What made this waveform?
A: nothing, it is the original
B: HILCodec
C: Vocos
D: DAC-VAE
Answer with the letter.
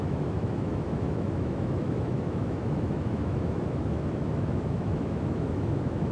D